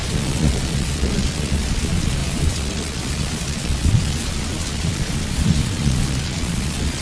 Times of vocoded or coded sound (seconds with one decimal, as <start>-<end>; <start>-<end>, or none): 0.0-7.0